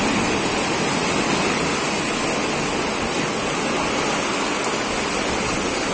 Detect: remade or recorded recorded